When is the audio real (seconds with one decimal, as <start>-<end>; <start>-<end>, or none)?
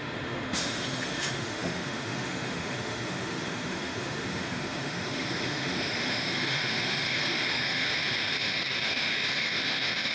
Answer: none